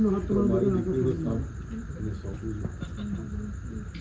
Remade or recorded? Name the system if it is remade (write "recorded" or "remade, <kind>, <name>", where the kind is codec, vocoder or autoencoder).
recorded